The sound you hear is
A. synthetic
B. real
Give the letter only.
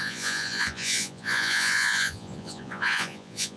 A